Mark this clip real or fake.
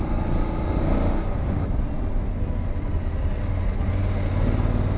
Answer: real